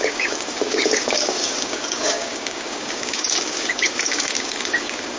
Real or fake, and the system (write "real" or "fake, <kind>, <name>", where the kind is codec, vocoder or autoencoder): fake, codec, DAC